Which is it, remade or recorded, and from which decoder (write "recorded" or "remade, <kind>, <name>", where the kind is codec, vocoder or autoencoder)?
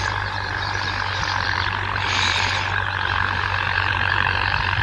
remade, vocoder, BigVGAN v2